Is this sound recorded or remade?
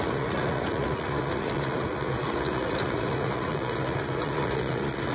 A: remade